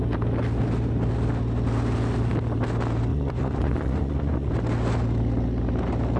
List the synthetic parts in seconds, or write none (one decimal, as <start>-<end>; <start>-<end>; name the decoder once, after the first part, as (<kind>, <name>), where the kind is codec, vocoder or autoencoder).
3.1-4.5 (vocoder, Vocos)